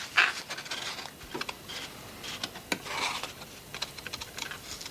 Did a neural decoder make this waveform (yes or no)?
no